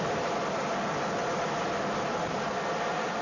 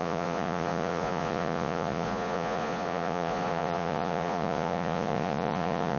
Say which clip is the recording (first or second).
first